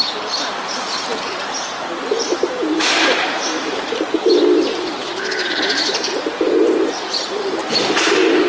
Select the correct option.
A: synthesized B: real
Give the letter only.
A